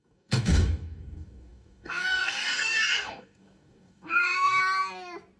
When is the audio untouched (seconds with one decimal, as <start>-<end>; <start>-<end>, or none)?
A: 4.6-5.4